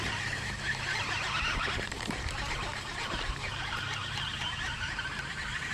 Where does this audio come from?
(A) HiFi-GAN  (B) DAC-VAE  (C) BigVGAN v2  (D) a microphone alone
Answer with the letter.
C